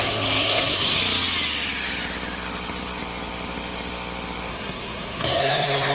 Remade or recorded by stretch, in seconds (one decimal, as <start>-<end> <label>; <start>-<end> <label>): 0.0-1.0 remade; 1.0-4.5 recorded; 4.5-5.9 remade